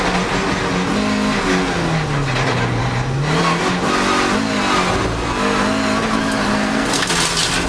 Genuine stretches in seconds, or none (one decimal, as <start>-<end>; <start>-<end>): 0.0-6.5; 7.1-7.7